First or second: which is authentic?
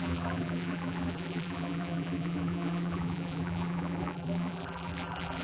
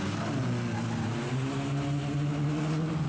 second